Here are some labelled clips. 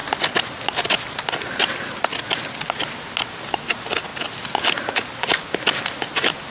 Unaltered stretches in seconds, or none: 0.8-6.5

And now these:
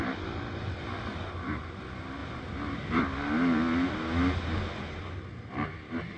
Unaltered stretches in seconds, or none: 0.0-1.1; 1.8-2.2; 3.0-6.2

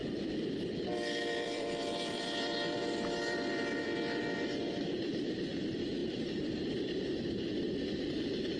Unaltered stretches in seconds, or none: none

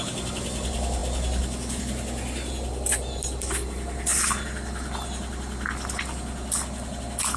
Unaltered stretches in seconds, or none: 0.0-7.4

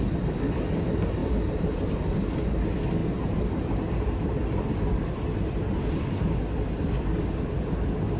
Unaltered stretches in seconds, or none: 0.0-8.2